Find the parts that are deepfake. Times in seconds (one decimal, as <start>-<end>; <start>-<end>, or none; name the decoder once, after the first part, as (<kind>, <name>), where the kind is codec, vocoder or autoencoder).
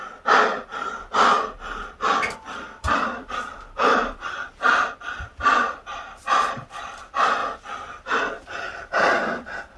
0.0-0.7 (vocoder, BigVGAN v2); 2.0-7.4; 8.3-9.8